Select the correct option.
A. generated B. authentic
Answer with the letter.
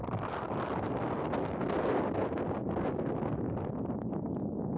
B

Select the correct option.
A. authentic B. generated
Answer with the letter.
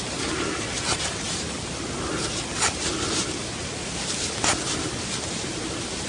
A